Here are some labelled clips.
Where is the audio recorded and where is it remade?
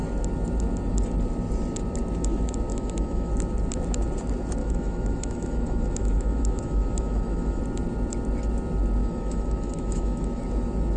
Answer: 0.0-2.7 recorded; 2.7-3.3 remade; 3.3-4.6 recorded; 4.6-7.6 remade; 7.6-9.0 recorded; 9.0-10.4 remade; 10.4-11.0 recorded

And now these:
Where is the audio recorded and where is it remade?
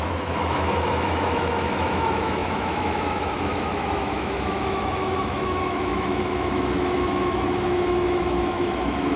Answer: 0.0-9.2 remade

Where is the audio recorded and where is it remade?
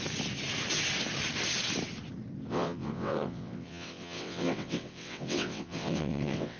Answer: 0.0-2.5 recorded; 2.5-6.6 remade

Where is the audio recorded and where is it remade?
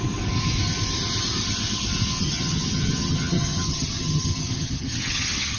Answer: 0.0-2.1 recorded; 2.1-5.6 remade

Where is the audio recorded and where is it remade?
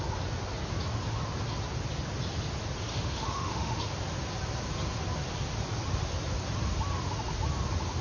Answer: 0.0-2.9 recorded; 2.9-3.8 remade; 3.8-8.0 recorded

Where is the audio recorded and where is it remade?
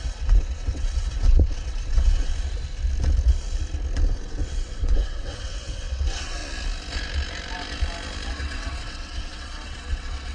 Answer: 0.0-2.3 remade; 2.3-4.1 recorded; 4.1-6.4 remade; 6.4-8.3 recorded; 8.3-10.3 remade